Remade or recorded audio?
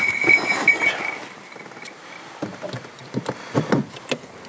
recorded